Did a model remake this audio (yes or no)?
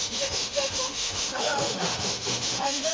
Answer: yes